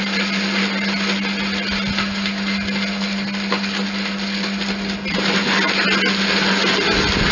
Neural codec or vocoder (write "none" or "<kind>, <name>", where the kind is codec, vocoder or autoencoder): none